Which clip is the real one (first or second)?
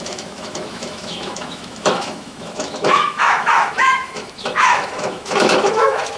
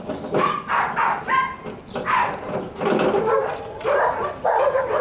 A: second